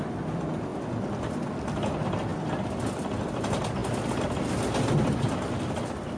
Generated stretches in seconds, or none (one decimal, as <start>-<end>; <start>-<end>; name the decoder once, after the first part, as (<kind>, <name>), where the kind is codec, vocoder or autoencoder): 0.0-3.8 (vocoder, BigVGAN v2); 5.7-6.2

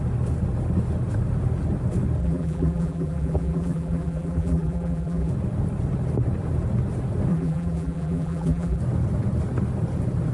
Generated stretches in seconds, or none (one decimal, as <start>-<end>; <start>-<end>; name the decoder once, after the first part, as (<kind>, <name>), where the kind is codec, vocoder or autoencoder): 2.2-5.3 (vocoder, BigVGAN v2); 7.3-8.8

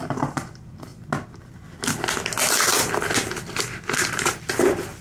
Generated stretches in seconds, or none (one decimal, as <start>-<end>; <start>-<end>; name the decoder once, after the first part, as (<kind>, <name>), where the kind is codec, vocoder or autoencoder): none

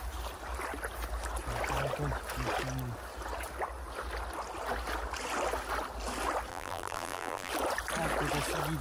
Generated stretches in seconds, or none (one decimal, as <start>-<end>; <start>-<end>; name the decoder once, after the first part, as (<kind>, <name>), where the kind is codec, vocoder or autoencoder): 6.5-7.5 (vocoder, BigVGAN v2)

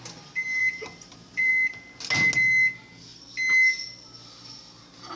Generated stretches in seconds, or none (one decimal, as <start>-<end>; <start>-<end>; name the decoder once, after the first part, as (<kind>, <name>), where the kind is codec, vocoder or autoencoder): 0.5-1.5 (vocoder, BigVGAN v2)